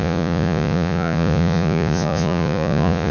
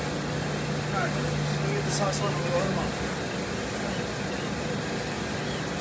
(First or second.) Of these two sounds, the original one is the second